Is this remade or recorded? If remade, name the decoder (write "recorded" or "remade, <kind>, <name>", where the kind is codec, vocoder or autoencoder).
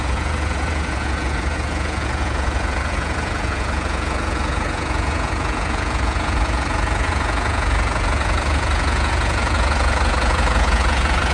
remade, vocoder, Vocos